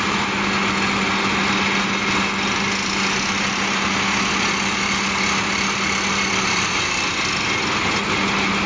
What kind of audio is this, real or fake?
real